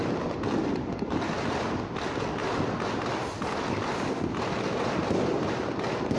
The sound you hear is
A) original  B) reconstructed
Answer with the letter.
A